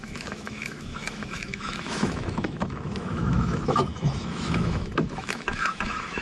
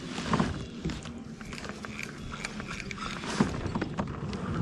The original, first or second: second